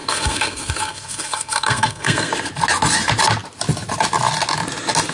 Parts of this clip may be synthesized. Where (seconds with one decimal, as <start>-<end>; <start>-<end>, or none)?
0.0-2.3